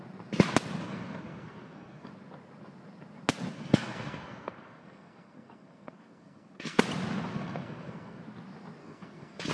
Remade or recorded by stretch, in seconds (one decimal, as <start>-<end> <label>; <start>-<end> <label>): 0.0-0.8 recorded; 0.8-2.1 remade; 2.1-3.5 recorded; 3.5-6.8 remade; 6.8-7.3 recorded; 7.3-8.2 remade; 8.2-8.8 recorded; 8.8-9.5 remade